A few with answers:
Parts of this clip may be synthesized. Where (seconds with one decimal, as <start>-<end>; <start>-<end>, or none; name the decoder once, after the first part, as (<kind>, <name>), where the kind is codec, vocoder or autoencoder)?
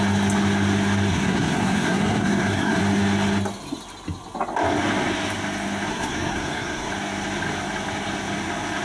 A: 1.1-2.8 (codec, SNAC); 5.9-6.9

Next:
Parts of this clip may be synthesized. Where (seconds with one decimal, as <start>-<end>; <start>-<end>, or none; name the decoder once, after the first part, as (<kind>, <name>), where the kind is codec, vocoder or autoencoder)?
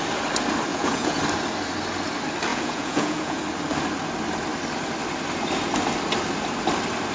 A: 0.7-1.2 (vocoder, Vocos); 2.5-3.4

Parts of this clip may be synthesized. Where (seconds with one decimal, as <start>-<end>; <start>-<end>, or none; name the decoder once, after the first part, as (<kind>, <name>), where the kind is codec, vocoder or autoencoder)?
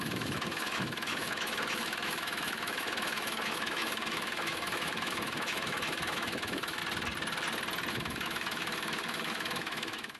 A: 0.0-6.8 (autoencoder, DAC-VAE); 7.9-10.2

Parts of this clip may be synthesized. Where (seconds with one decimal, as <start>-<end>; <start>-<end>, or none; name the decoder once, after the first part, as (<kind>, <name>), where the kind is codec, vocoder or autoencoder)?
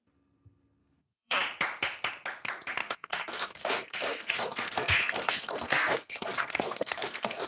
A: 0.8-1.4 (codec, SNAC); 2.8-7.5